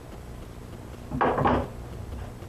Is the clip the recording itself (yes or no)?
yes